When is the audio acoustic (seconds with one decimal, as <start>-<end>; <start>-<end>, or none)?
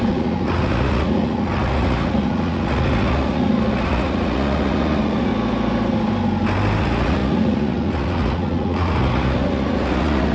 5.3-6.8